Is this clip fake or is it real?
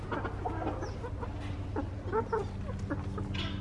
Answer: real